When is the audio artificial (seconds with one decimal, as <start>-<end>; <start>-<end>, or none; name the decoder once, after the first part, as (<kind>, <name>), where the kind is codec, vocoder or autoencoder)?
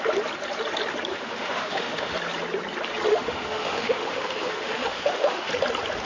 1.1-2.1 (autoencoder, DAC-VAE); 3.1-5.5